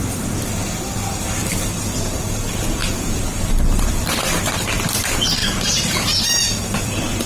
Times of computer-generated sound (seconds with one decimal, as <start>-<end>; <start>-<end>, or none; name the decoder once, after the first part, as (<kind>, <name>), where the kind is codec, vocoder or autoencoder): 0.0-2.8 (vocoder, BigVGAN v2); 3.8-7.3